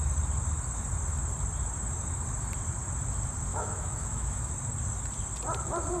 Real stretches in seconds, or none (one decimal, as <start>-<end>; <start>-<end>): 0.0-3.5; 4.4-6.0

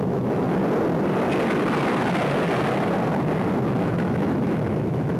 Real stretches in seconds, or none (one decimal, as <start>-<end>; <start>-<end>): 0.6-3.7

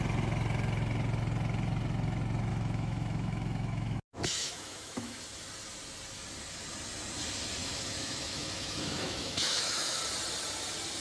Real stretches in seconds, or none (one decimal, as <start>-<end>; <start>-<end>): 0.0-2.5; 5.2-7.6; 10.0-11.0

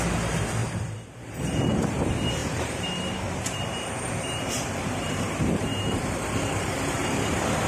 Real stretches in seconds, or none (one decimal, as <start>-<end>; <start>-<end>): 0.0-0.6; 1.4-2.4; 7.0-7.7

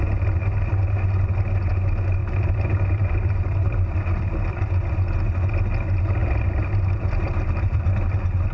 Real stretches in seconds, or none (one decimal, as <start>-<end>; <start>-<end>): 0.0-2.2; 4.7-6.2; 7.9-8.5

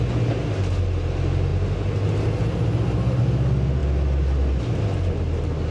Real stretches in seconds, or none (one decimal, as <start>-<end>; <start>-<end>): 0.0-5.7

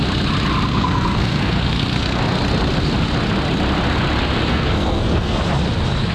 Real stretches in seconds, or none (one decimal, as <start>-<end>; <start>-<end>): 0.0-0.7; 2.2-4.5; 5.4-6.1